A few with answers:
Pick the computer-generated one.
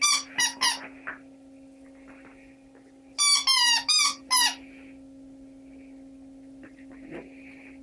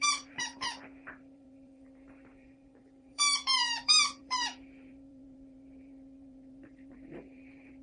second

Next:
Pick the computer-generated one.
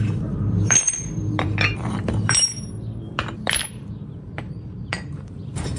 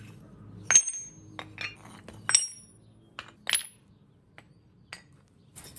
first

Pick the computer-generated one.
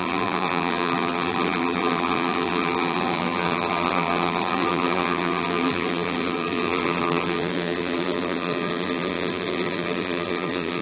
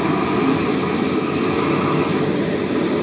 first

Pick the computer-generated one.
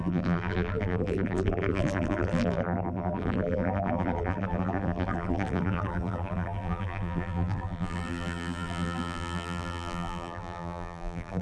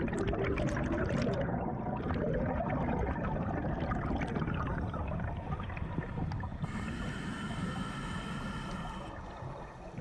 first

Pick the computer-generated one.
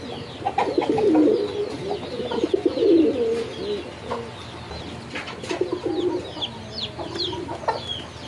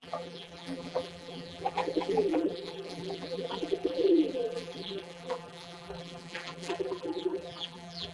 second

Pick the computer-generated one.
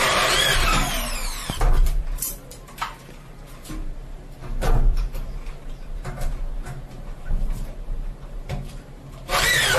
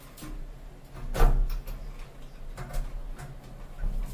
first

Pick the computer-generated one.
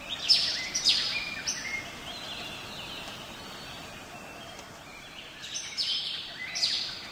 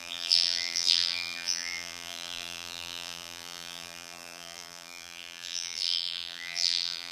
second